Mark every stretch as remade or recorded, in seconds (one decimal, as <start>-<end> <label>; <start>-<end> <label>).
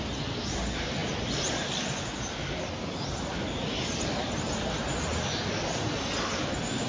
0.0-6.9 recorded